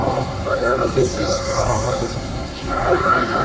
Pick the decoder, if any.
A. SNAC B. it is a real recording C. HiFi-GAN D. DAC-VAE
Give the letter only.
A